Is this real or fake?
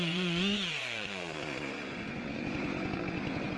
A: fake